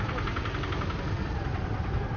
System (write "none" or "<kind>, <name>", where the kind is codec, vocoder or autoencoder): none